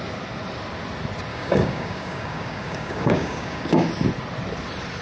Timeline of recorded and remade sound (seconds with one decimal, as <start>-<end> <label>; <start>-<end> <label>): 0.0-1.3 recorded; 1.3-3.9 remade; 3.9-5.0 recorded